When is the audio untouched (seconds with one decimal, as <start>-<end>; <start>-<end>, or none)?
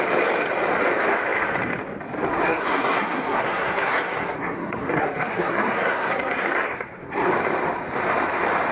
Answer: 0.0-2.3; 7.3-8.7